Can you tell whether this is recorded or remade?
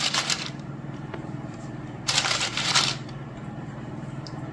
remade